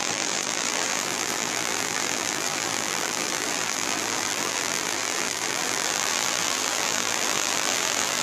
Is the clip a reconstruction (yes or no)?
yes